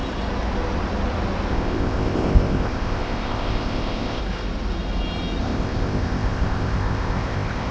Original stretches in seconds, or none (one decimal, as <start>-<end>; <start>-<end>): 0.0-1.5; 4.2-5.4